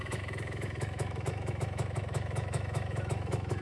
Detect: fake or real fake